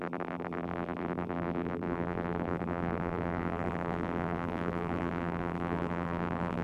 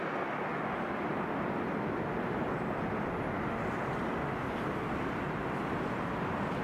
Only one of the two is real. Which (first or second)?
second